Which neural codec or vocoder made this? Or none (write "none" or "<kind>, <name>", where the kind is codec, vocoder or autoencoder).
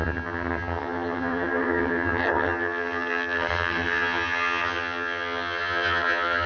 vocoder, HiFi-GAN